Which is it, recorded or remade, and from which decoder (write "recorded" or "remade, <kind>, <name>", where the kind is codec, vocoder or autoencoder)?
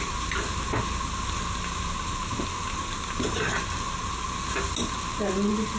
recorded